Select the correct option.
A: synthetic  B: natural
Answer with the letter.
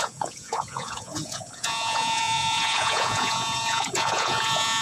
A